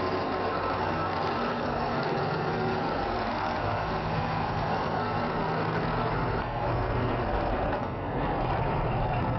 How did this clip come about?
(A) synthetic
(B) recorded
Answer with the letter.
A